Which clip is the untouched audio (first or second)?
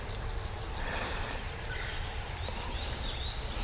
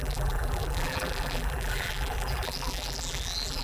first